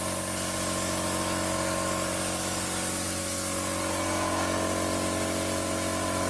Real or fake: real